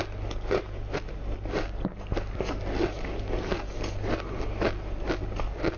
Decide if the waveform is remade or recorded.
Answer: recorded